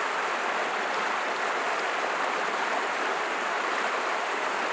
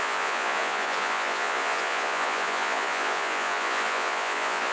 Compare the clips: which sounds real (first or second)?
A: first